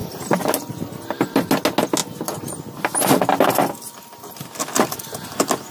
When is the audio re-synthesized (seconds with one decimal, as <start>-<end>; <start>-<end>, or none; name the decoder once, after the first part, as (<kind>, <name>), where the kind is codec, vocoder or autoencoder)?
none